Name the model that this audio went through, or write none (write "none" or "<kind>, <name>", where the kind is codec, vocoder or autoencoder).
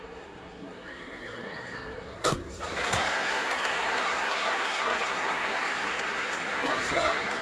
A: codec, SNAC